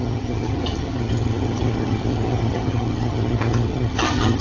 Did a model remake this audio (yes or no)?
yes